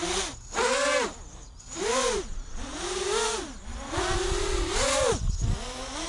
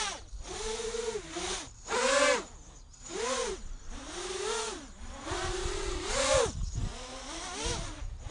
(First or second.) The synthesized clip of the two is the second